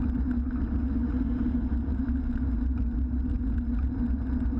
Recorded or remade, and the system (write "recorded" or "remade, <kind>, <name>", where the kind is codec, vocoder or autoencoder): recorded